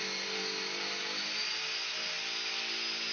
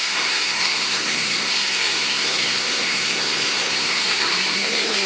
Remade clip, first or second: second